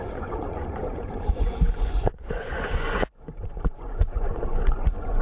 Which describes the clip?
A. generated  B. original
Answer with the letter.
A